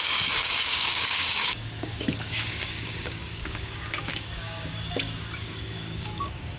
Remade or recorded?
remade